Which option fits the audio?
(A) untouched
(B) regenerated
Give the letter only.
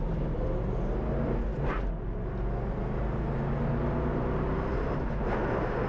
A